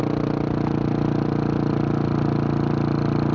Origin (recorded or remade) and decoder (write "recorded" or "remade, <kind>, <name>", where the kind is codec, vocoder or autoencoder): recorded